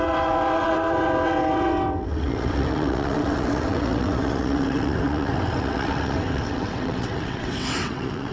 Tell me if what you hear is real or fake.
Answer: fake